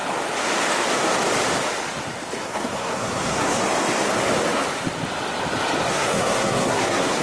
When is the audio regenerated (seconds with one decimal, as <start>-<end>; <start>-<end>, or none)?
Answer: 2.4-3.6; 5.9-7.2